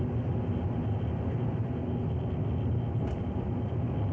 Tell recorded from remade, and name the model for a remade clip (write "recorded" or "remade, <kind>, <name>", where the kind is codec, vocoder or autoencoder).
recorded